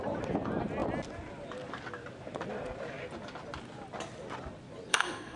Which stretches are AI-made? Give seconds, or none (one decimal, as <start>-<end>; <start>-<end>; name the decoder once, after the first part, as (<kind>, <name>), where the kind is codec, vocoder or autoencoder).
4.9-5.4 (codec, DAC)